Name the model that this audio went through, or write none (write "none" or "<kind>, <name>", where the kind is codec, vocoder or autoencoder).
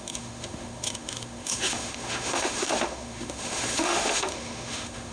autoencoder, DAC-VAE